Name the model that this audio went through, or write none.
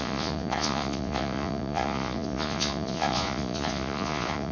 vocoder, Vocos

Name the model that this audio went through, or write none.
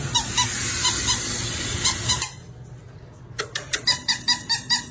none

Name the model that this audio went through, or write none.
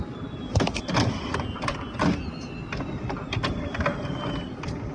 none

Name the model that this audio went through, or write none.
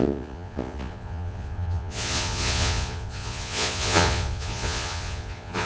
vocoder, Vocos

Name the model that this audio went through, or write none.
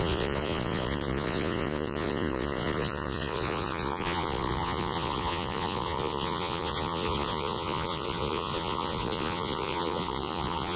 vocoder, Vocos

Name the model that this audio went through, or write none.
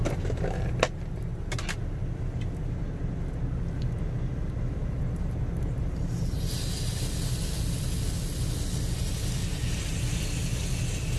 none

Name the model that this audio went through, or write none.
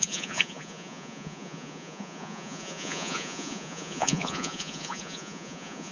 vocoder, Vocos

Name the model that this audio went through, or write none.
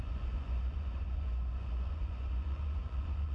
vocoder, Vocos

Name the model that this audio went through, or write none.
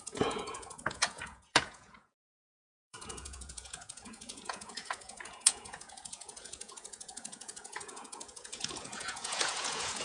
vocoder, Vocos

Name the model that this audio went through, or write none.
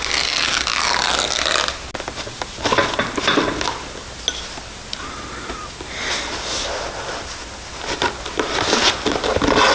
none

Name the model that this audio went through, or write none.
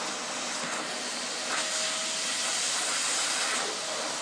none